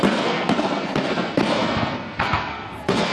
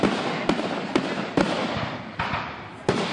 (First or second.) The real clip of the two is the second